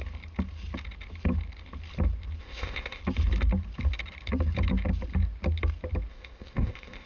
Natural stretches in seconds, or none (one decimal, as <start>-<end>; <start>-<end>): 0.0-2.4; 3.0-6.1